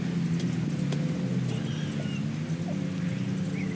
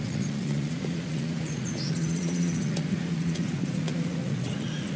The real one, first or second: first